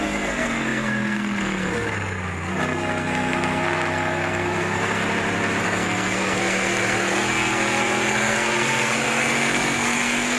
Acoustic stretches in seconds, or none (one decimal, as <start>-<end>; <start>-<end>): 5.0-5.6